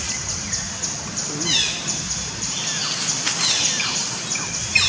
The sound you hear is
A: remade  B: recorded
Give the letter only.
B